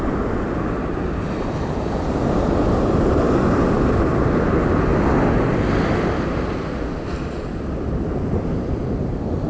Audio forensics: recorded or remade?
recorded